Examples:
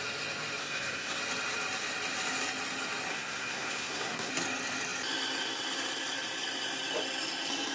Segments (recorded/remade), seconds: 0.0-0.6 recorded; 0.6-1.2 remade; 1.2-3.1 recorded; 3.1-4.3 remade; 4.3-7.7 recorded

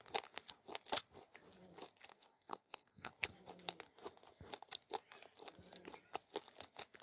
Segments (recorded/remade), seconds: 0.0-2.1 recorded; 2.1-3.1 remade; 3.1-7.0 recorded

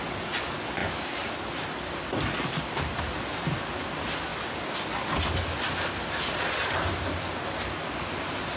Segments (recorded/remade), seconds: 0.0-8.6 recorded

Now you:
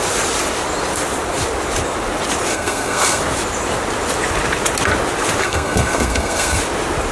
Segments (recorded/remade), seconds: 0.0-2.5 recorded; 2.5-3.2 remade; 3.2-5.4 recorded; 5.4-6.6 remade; 6.6-7.1 recorded

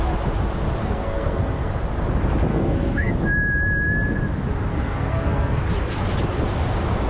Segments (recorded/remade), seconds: 0.0-0.8 recorded; 0.8-1.7 remade; 1.7-2.5 recorded; 2.5-3.1 remade; 3.1-4.7 recorded; 4.7-5.6 remade; 5.6-7.1 recorded